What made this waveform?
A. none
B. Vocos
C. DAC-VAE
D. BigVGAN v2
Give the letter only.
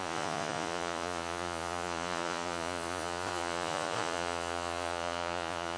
B